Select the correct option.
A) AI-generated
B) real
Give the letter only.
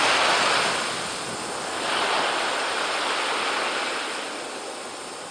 B